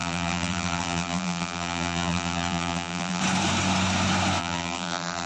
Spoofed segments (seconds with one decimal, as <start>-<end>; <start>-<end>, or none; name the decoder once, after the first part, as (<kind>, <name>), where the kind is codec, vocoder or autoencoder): 0.0-3.2 (vocoder, BigVGAN v2); 4.4-5.3